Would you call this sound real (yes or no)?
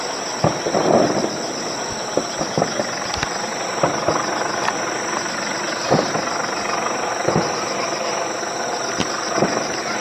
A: yes